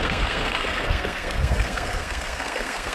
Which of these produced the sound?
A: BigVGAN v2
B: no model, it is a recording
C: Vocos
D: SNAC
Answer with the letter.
D